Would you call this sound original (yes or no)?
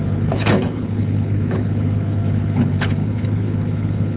no